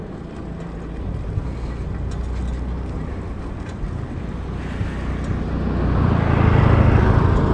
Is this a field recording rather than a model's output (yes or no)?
yes